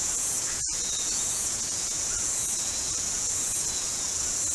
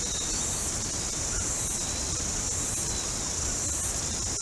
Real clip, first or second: second